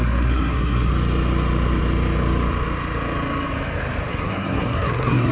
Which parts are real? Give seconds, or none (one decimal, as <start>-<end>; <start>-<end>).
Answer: 0.9-4.1